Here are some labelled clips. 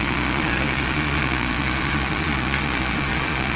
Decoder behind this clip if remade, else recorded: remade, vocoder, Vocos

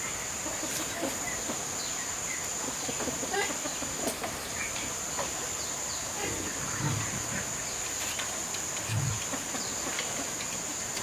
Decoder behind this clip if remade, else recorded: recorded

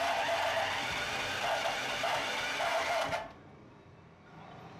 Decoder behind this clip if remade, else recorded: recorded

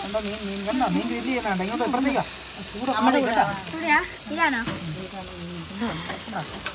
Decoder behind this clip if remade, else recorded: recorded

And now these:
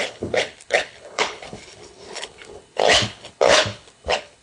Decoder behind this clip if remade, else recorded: remade, codec, HILCodec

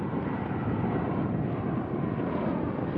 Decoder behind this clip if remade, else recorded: recorded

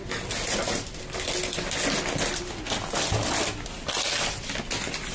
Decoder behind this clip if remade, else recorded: recorded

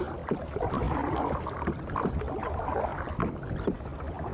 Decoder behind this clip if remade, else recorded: remade, vocoder, BigVGAN v2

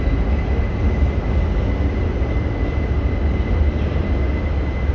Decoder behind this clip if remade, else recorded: recorded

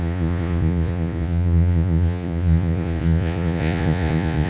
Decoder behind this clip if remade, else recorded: remade, vocoder, Vocos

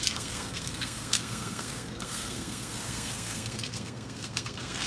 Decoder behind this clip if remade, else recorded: remade, codec, SNAC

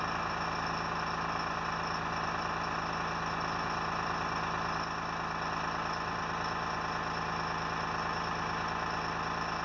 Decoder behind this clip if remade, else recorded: recorded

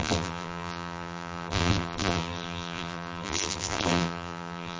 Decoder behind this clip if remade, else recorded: remade, vocoder, BigVGAN v2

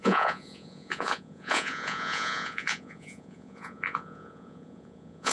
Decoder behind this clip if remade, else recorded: remade, vocoder, Vocos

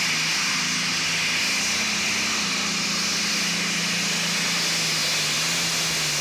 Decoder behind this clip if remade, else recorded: recorded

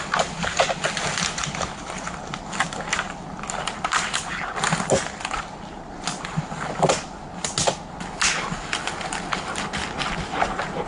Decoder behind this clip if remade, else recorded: recorded